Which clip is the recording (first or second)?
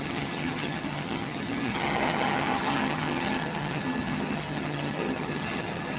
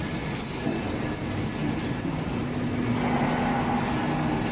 second